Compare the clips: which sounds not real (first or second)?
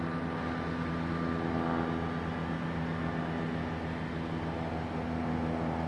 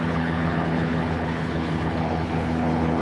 second